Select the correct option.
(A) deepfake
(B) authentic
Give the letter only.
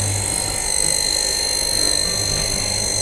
B